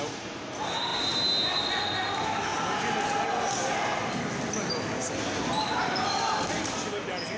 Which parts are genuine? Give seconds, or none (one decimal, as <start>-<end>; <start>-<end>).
0.0-7.4